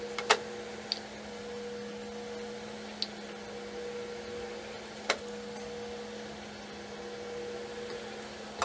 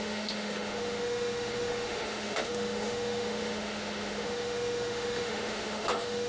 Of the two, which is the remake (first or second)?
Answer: second